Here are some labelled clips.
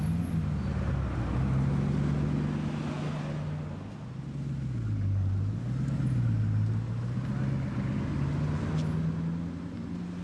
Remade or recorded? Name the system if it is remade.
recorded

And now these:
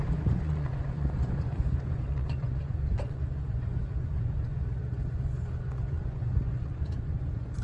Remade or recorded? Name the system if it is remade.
remade, vocoder, Vocos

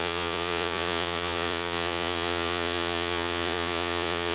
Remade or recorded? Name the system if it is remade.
remade, vocoder, Vocos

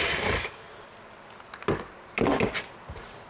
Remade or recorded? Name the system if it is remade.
recorded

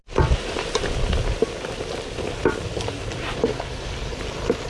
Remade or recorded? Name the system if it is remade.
recorded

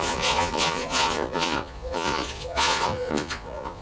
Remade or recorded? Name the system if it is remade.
remade, vocoder, Vocos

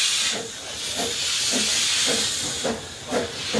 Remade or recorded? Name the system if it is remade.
recorded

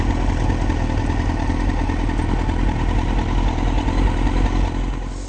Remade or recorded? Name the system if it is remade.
recorded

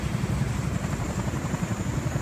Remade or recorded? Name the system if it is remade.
recorded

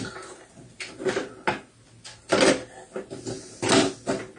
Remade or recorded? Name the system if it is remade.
recorded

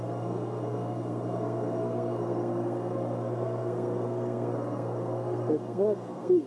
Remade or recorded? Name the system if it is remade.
remade, codec, SNAC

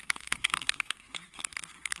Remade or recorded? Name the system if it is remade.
remade, codec, SNAC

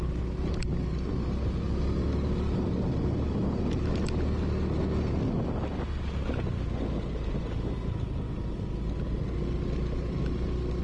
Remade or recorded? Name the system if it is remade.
recorded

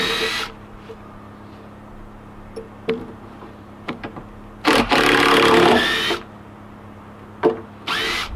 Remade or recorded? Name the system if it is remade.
recorded